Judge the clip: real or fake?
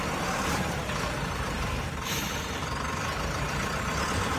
fake